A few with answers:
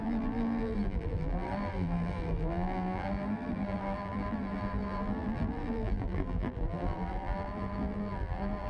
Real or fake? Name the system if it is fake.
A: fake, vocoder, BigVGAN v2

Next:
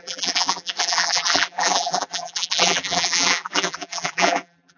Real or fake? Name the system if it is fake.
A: fake, vocoder, BigVGAN v2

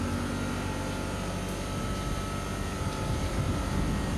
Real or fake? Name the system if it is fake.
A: real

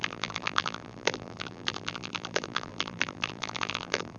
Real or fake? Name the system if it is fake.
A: fake, vocoder, BigVGAN v2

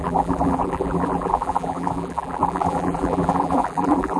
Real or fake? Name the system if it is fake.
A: fake, vocoder, BigVGAN v2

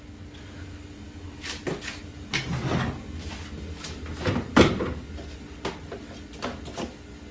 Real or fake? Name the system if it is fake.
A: real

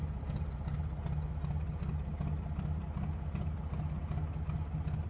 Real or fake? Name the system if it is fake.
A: real